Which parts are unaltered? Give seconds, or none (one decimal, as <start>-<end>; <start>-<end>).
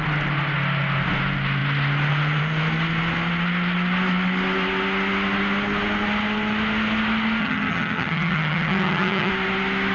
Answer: 0.0-7.4; 9.3-9.9